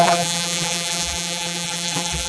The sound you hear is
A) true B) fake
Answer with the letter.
B